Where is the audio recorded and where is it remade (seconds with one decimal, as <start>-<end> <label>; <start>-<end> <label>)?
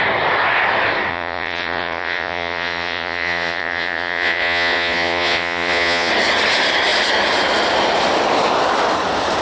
0.0-1.1 recorded; 1.1-6.1 remade; 6.1-9.4 recorded